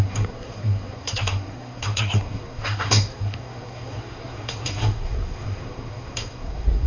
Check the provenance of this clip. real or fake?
fake